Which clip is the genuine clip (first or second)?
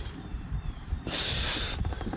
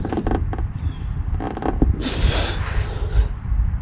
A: second